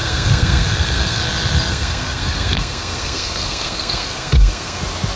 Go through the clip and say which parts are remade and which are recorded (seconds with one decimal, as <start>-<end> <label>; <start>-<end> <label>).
0.0-1.2 remade; 1.2-1.7 recorded; 1.7-4.8 remade; 4.8-5.2 recorded